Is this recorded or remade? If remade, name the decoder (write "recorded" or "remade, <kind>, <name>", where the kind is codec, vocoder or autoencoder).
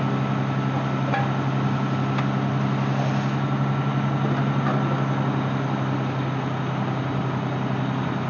recorded